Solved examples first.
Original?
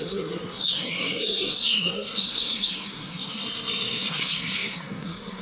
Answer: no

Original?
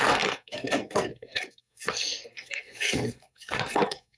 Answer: no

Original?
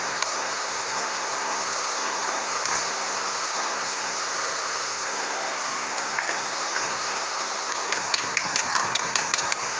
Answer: no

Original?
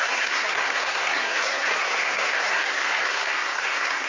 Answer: no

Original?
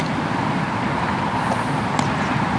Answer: yes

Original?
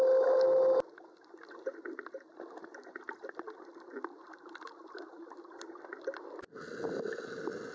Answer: yes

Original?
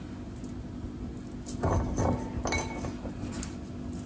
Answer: yes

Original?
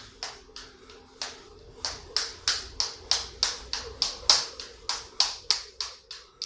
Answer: yes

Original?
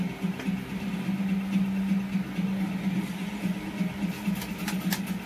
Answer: yes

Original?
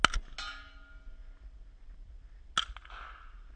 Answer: yes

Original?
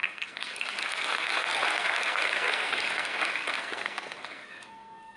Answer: no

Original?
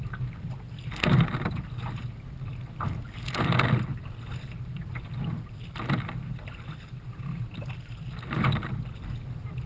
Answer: yes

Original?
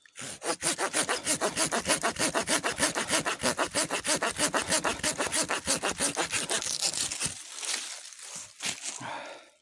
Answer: yes